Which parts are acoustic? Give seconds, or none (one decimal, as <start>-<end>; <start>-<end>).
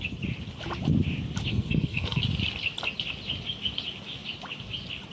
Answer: 0.0-1.5; 2.2-5.1